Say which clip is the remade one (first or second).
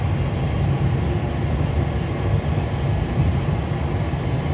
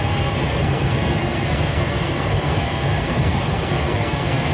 second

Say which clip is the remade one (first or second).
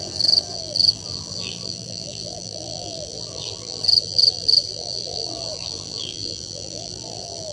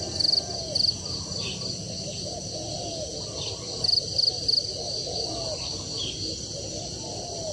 first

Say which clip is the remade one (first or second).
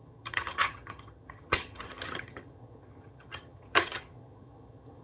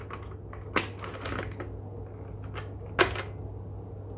first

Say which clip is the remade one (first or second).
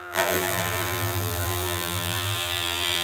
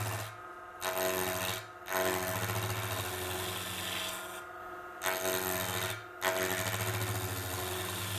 first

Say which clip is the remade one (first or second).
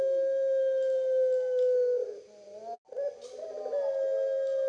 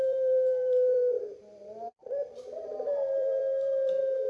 second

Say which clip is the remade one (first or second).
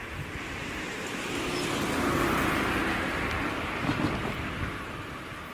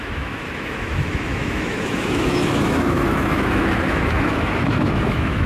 second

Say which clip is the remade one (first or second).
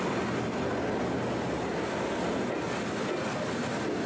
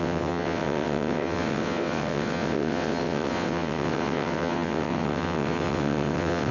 second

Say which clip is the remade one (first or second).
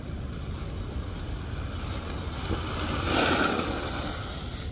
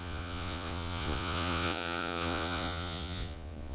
second